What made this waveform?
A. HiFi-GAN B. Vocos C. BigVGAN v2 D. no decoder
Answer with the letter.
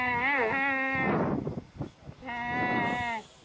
D